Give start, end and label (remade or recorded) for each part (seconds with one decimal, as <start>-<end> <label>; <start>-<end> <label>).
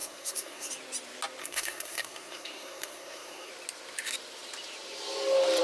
0.0-0.7 remade; 0.7-1.4 recorded; 1.4-3.5 remade; 3.5-5.6 recorded